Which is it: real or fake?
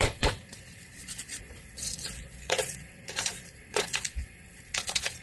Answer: fake